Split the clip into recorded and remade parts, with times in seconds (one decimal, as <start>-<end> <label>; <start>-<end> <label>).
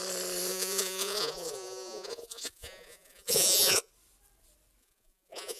0.0-0.5 recorded; 0.5-3.9 remade; 3.9-4.8 recorded; 4.8-5.6 remade